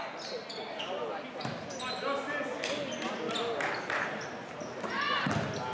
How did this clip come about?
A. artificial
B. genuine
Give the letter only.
B